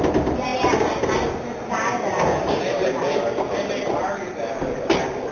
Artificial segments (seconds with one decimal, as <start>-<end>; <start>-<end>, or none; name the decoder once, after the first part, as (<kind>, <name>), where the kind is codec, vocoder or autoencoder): none